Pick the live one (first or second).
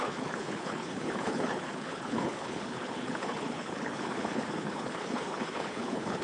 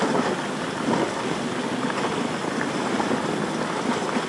second